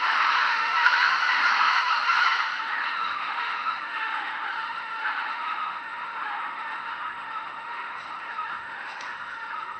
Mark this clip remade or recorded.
remade